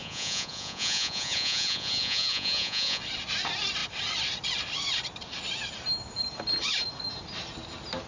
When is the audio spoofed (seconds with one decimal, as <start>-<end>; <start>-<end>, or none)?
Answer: 0.0-3.0